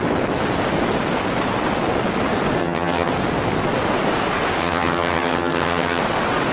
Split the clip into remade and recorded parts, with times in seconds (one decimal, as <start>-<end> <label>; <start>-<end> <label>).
0.0-2.6 recorded; 2.6-3.1 remade; 3.1-4.6 recorded; 4.6-6.0 remade; 6.0-6.5 recorded